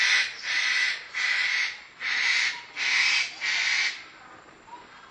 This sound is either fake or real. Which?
real